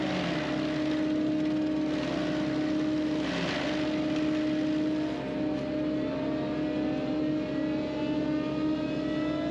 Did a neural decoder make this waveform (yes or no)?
no